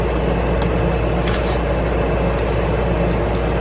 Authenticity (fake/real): real